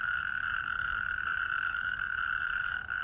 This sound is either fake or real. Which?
real